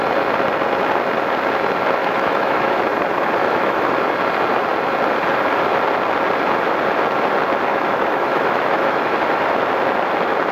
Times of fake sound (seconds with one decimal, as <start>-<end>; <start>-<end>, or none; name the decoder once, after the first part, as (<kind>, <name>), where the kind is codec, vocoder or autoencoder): 2.0-2.7 (autoencoder, DAC-VAE); 3.4-4.0; 7.7-9.1